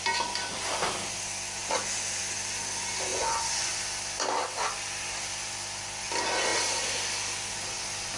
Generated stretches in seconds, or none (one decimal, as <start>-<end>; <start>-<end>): 3.1-3.7